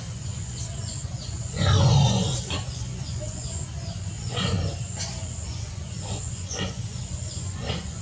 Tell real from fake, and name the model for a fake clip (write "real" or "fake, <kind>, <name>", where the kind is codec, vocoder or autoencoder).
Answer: fake, vocoder, Vocos